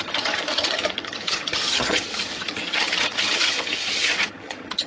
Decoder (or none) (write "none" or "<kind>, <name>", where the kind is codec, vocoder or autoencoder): vocoder, HiFi-GAN